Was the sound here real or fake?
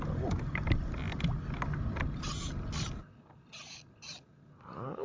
real